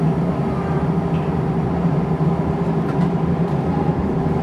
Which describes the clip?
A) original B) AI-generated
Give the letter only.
B